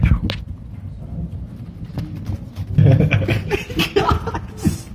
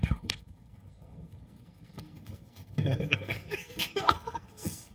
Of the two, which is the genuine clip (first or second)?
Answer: first